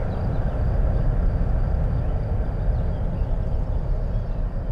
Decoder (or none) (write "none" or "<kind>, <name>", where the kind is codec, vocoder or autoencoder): none